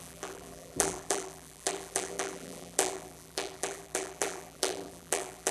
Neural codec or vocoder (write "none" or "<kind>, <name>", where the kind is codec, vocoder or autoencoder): vocoder, BigVGAN v2